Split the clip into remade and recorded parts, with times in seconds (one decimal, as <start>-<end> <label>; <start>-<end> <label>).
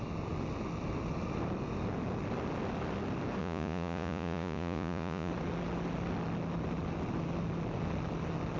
0.0-3.4 recorded; 3.4-5.3 remade; 5.3-8.6 recorded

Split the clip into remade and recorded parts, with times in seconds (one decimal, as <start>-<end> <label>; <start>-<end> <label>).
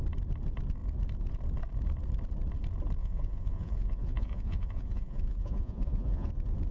0.0-3.0 recorded; 3.0-6.3 remade; 6.3-6.7 recorded